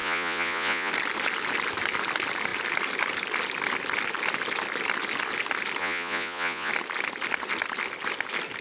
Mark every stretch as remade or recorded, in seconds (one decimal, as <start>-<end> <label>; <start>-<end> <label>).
0.0-0.9 remade; 0.9-5.8 recorded; 5.8-6.7 remade; 6.7-8.6 recorded